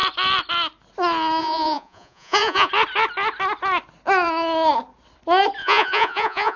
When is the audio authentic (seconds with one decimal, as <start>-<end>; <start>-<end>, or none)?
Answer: 0.0-1.4; 2.7-5.6